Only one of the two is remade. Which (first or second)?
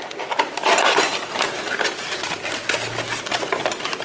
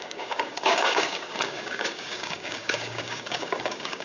second